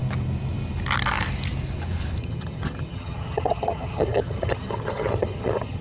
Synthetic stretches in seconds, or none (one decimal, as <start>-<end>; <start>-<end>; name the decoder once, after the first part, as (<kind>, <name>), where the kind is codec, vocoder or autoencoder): 2.2-5.8 (vocoder, HiFi-GAN)